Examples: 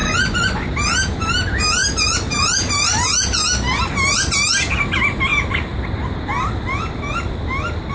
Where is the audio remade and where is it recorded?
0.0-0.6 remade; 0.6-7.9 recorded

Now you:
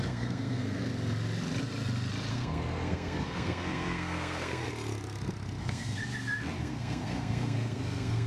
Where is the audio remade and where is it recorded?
0.0-0.9 remade; 0.9-2.3 recorded; 2.3-4.6 remade; 4.6-5.6 recorded; 5.6-6.0 remade; 6.0-6.6 recorded; 6.6-8.3 remade

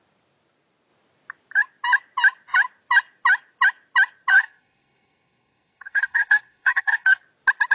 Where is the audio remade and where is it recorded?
0.0-4.3 recorded; 4.3-7.2 remade; 7.2-7.7 recorded

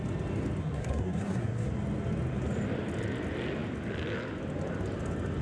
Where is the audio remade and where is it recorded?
0.0-0.6 recorded; 0.6-1.7 remade; 1.7-5.4 recorded

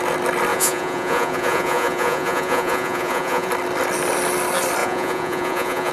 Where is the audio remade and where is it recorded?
0.0-0.5 recorded; 0.5-3.5 remade; 3.5-4.8 recorded; 4.8-5.9 remade

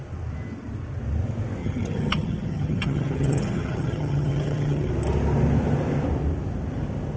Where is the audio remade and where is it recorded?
0.0-1.6 recorded; 1.6-4.9 remade; 4.9-7.2 recorded

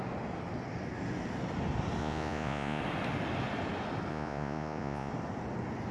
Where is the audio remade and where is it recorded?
0.0-2.0 recorded; 2.0-2.8 remade; 2.8-4.1 recorded; 4.1-5.1 remade; 5.1-5.9 recorded

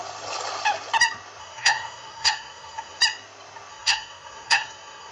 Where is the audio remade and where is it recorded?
0.0-1.4 recorded; 1.4-3.0 remade; 3.0-3.7 recorded; 3.7-5.1 remade